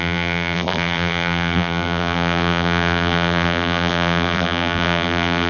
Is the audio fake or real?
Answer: fake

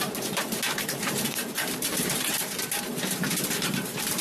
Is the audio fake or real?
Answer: fake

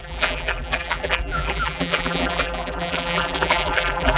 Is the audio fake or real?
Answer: fake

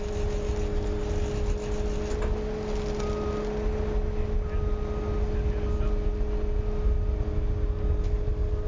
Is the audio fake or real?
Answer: real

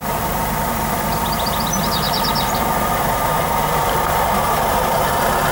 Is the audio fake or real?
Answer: fake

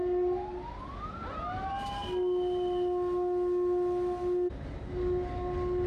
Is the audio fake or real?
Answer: real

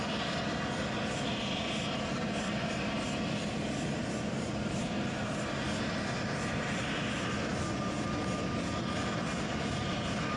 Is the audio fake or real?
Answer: real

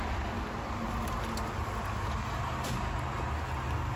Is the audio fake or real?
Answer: real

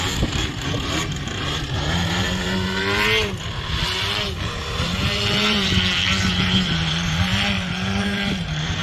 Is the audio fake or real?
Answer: fake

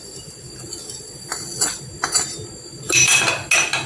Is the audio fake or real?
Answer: real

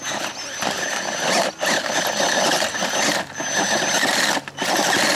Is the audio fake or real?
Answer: real